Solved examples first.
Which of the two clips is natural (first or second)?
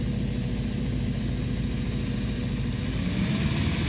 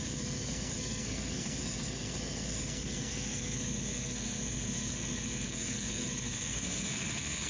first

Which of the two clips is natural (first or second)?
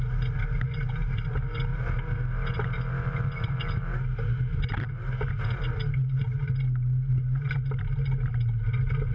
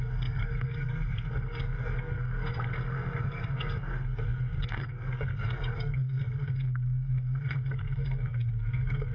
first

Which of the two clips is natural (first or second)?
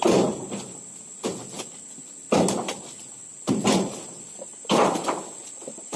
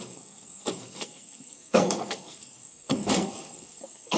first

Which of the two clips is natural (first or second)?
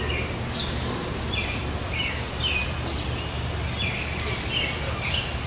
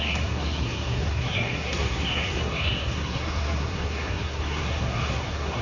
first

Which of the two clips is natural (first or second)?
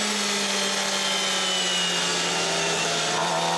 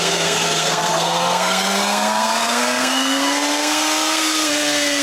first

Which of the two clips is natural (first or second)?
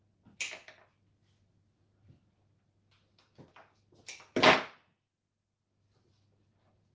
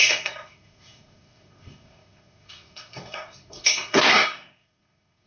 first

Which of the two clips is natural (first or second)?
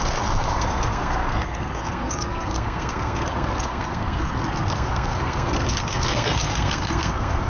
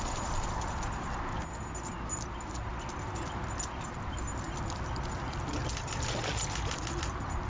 second